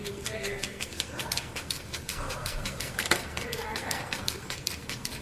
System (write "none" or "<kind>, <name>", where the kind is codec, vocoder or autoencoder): codec, SNAC